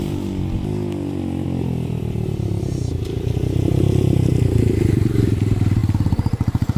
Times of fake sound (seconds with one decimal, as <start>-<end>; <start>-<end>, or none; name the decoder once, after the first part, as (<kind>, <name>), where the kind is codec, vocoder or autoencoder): none